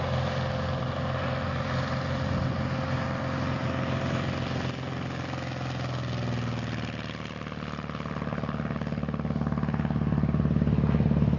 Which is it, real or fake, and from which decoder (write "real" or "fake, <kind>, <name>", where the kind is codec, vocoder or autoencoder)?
real